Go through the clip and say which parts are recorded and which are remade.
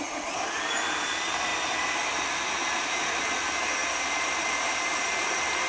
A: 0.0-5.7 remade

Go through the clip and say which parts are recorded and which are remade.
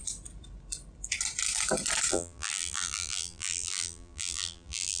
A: 0.0-2.1 recorded; 2.1-5.0 remade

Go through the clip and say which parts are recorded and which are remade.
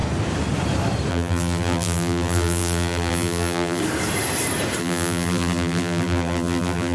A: 0.0-1.1 recorded; 1.1-3.8 remade; 3.8-4.8 recorded; 4.8-6.9 remade